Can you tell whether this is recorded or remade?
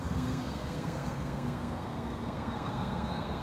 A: remade